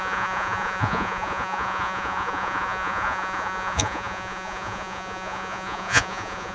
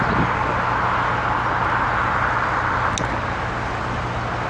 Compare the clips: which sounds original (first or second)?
second